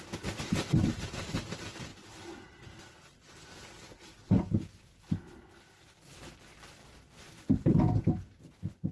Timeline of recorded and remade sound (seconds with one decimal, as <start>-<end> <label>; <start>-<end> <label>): 0.0-8.9 recorded